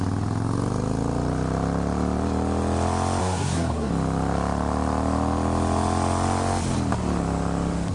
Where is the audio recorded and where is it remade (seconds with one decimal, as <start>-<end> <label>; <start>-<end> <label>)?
0.0-3.2 recorded; 3.2-3.9 remade; 3.9-7.9 recorded